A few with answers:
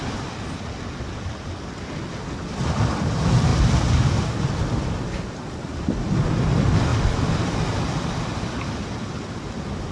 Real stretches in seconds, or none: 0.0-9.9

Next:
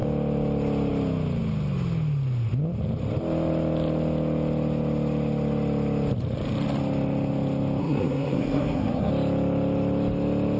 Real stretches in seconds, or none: 0.0-7.8; 9.1-10.6